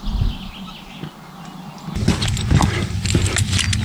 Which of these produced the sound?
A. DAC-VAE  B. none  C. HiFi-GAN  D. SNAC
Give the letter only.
B